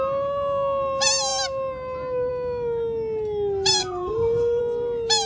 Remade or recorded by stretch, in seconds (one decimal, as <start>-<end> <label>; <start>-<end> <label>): 0.0-3.8 recorded; 3.8-4.6 remade; 4.6-5.3 recorded